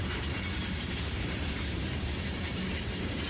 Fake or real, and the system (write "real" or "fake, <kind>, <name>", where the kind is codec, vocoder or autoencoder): fake, vocoder, BigVGAN v2